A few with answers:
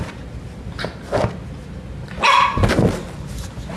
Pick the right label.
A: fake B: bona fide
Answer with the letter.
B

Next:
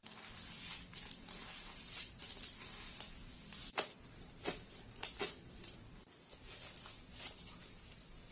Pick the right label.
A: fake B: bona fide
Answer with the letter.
B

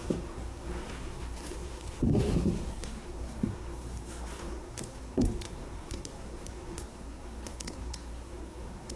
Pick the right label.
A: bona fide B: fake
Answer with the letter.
B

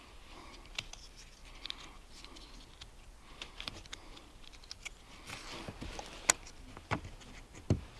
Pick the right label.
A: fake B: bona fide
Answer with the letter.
B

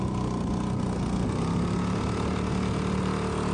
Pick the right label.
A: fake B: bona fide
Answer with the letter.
B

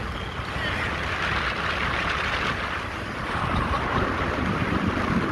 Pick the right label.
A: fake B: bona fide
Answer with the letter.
B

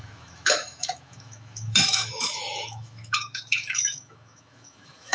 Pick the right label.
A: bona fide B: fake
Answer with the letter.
B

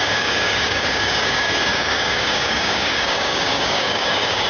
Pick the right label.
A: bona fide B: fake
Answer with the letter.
B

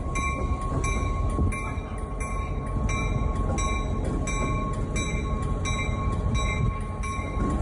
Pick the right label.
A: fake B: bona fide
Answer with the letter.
B